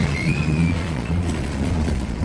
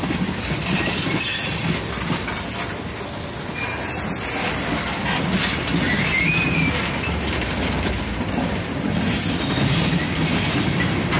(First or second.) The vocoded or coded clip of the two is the first